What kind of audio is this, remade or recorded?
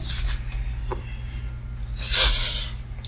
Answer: recorded